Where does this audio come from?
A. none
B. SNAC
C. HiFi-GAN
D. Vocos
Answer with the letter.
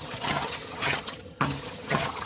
C